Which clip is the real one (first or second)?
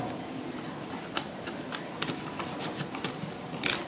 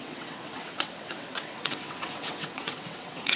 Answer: first